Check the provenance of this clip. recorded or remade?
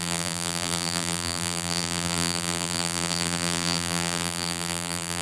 remade